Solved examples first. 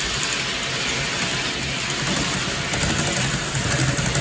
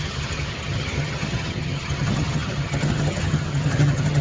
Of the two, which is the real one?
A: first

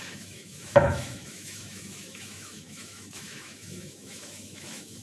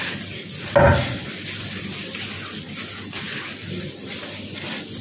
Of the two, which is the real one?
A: second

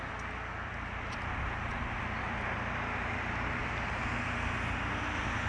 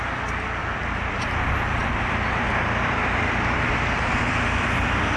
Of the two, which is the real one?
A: first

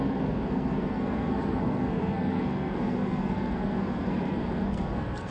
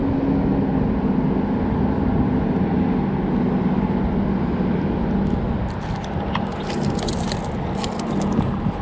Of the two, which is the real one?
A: second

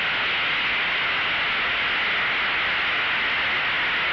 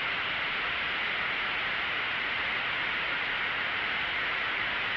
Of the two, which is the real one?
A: first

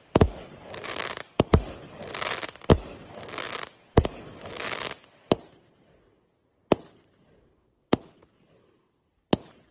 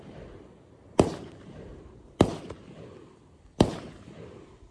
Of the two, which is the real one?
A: first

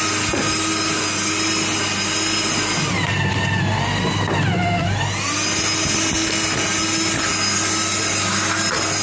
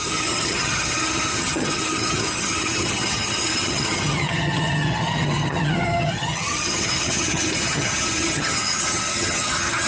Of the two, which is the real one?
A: first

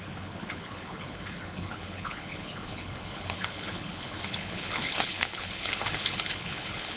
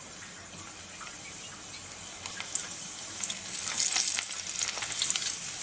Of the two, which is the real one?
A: second